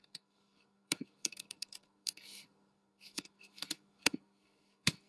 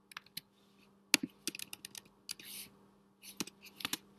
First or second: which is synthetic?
first